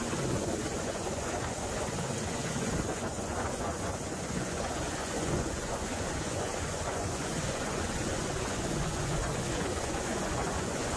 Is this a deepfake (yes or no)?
yes